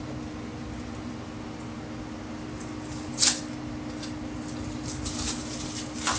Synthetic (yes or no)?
no